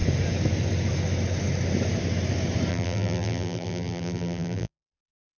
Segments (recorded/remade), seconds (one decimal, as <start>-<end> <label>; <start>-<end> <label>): 0.0-2.7 recorded; 2.7-5.0 remade; 5.0-5.4 recorded